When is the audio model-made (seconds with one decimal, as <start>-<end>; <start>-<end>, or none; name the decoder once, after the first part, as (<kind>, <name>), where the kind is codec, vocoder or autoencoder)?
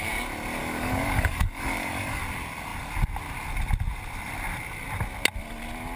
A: 0.6-2.2 (codec, DAC)